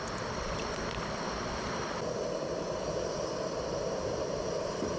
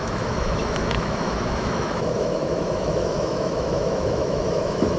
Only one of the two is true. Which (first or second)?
first